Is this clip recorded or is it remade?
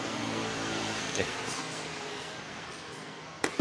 remade